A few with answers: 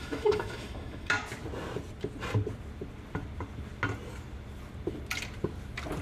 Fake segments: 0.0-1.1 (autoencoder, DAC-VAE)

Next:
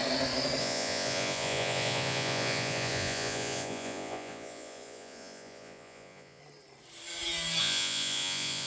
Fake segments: 0.6-6.4 (vocoder, Vocos); 7.6-8.7